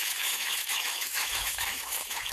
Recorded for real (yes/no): no